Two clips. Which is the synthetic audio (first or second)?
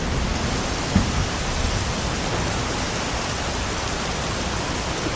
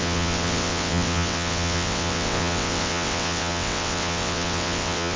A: second